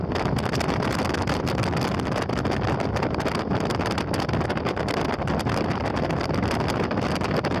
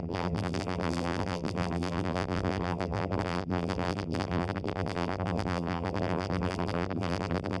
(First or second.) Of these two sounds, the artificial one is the second